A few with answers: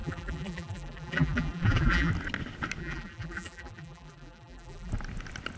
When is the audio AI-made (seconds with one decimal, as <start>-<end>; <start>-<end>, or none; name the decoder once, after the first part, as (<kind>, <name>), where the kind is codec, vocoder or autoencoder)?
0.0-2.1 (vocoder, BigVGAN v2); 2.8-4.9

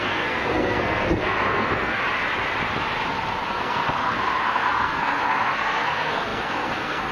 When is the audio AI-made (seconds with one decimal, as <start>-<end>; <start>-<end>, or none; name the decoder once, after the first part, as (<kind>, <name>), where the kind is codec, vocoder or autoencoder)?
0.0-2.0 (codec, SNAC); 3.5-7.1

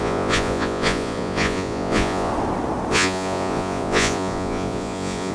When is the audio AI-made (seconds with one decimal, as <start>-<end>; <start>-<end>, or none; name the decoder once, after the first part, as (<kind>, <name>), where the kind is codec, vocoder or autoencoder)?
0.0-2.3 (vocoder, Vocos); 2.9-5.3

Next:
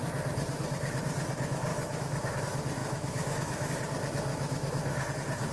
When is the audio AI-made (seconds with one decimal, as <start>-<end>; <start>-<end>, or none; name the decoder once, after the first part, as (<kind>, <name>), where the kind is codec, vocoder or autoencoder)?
1.7-2.4 (autoencoder, DAC-VAE); 2.8-3.7; 4.3-5.1

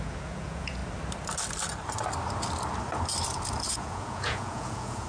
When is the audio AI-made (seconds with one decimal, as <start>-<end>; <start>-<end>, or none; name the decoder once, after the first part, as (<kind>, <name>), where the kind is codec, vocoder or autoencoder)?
0.0-0.8 (vocoder, Vocos); 3.7-5.1

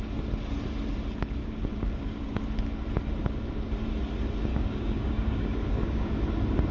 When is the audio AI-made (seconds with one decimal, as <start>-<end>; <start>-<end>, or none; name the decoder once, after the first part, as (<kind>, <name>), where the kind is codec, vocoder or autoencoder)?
1.4-2.4 (codec, DAC); 4.5-6.1

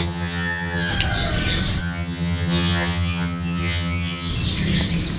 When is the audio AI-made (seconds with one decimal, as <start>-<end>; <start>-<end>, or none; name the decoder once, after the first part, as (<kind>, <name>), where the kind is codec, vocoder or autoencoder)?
0.0-0.9 (vocoder, HiFi-GAN); 1.8-4.3